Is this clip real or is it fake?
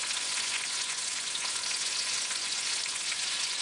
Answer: fake